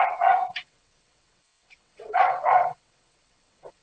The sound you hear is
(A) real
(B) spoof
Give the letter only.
B